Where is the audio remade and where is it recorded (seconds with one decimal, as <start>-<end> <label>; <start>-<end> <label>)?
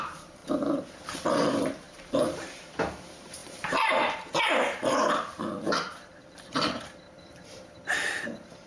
0.0-0.4 remade; 0.4-1.3 recorded; 1.3-8.7 remade